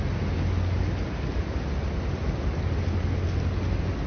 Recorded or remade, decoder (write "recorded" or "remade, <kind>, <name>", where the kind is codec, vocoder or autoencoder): recorded